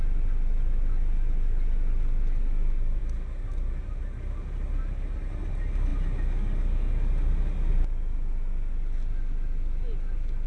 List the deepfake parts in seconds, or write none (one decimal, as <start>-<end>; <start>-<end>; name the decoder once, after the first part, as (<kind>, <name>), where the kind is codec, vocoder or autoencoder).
none

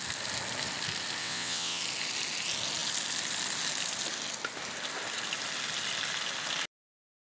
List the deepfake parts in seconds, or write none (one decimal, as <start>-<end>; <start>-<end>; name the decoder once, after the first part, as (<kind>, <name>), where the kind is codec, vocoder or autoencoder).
1.2-1.8 (vocoder, WaveNeXt)

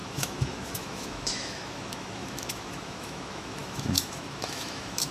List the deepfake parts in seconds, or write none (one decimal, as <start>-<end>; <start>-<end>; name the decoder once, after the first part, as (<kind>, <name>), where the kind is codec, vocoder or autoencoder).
0.0-5.1 (autoencoder, DAC-VAE)

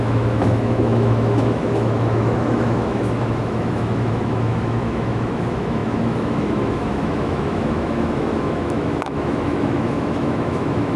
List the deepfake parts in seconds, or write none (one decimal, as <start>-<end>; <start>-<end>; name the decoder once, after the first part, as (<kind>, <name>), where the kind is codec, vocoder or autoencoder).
0.0-11.0 (autoencoder, DAC-VAE)

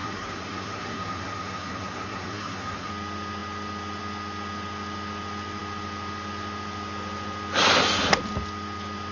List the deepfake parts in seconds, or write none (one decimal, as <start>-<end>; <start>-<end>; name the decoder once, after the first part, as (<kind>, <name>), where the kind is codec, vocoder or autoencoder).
0.0-2.9 (codec, SNAC)

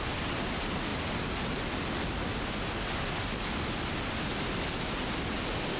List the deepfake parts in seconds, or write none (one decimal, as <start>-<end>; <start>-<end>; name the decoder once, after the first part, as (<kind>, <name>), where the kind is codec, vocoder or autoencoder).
none

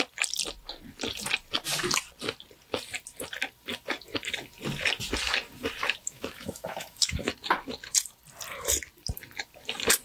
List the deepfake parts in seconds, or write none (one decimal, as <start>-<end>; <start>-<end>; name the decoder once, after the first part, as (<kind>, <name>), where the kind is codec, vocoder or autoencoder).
6.0-7.3 (autoencoder, DAC-VAE)

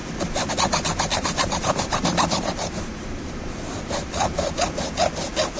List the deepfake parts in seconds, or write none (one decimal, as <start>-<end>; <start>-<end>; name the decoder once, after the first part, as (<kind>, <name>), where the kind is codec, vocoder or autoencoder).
1.1-4.5 (vocoder, BigVGAN v2)